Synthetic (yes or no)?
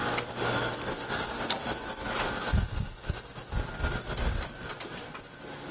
no